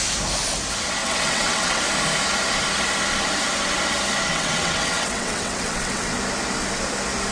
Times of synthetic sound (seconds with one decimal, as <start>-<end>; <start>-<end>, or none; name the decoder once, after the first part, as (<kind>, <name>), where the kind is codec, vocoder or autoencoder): 1.0-1.8 (vocoder, WaveNeXt); 4.3-6.1